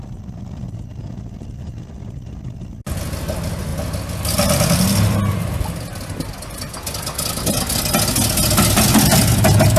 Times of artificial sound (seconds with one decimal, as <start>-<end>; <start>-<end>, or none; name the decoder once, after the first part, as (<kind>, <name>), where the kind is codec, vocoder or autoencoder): none